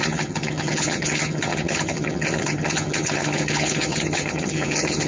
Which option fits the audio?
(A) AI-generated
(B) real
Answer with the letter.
A